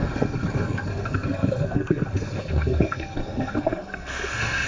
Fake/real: fake